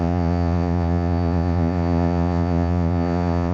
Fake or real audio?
fake